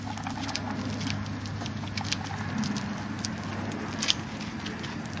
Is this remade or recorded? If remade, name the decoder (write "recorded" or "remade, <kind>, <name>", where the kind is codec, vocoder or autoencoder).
recorded